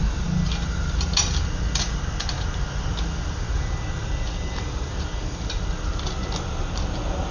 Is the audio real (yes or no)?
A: yes